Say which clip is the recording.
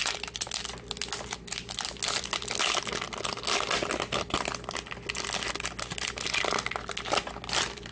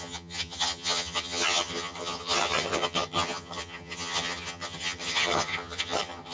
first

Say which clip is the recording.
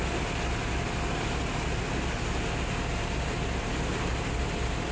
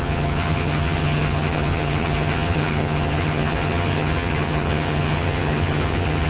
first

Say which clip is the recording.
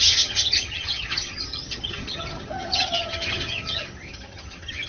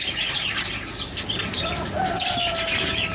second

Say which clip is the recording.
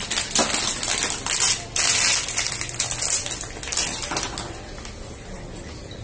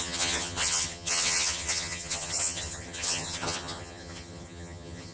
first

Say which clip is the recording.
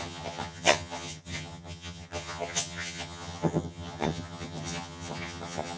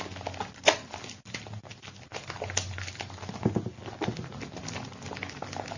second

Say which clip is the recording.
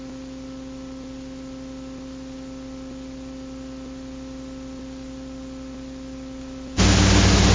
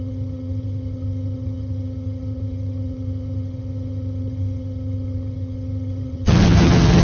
first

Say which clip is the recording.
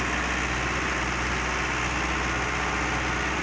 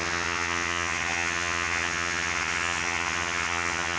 first